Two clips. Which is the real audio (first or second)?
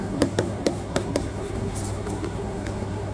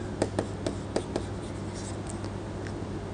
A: second